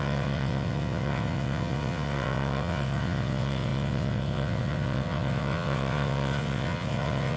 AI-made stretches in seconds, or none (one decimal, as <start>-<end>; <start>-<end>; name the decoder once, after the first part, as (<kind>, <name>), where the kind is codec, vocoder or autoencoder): 0.0-7.4 (vocoder, WaveNeXt)